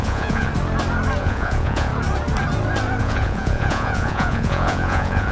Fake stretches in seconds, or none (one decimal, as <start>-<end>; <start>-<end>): 0.0-0.5; 1.2-1.9; 3.0-5.3